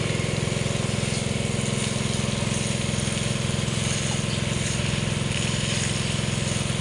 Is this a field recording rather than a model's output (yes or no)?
yes